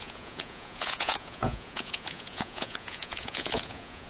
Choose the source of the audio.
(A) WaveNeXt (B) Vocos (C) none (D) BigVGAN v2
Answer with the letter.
B